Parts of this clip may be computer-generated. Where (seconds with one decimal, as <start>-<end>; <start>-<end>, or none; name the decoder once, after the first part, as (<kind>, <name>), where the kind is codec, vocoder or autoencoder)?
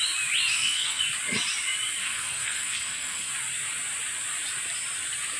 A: 0.5-1.0 (codec, SNAC); 2.0-3.3